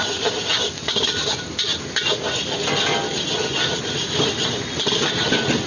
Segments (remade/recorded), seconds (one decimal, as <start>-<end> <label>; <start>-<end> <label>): 0.0-5.7 recorded

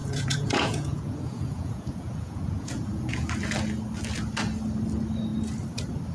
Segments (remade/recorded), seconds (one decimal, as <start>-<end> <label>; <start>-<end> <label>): 0.0-3.3 remade; 3.3-6.1 recorded

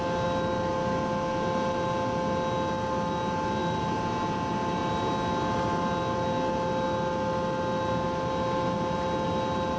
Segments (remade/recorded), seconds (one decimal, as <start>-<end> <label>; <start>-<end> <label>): 0.0-9.8 recorded